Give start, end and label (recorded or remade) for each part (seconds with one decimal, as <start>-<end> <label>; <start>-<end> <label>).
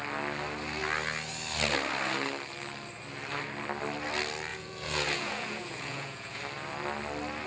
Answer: 0.0-4.5 recorded; 4.5-6.4 remade; 6.4-7.5 recorded